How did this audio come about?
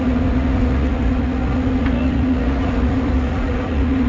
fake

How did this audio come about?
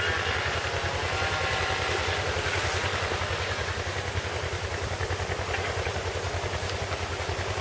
real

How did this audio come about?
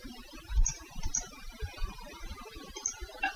real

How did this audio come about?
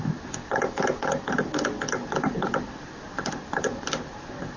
real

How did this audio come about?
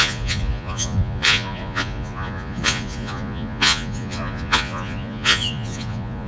fake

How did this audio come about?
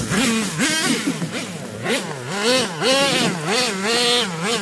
real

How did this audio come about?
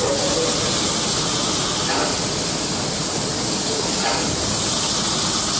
real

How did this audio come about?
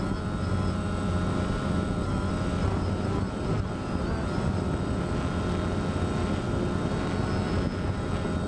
real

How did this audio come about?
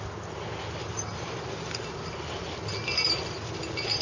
real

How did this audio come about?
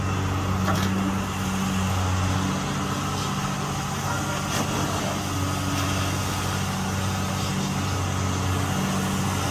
real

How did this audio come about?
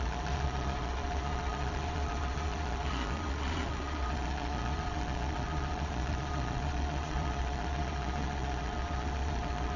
fake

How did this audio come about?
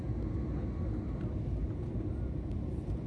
real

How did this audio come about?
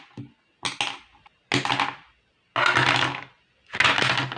real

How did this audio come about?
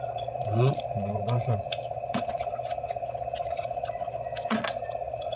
fake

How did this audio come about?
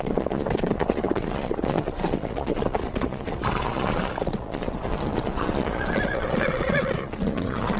fake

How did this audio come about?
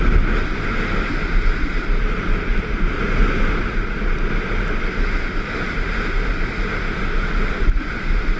real